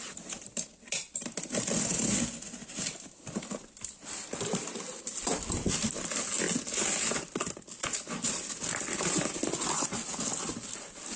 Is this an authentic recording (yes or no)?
yes